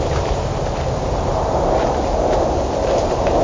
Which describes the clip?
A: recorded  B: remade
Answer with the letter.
A